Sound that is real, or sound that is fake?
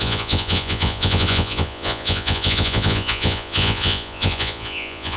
fake